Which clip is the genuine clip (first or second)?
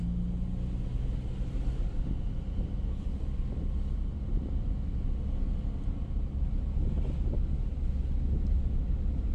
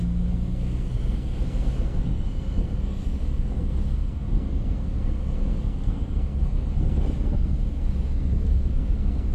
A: first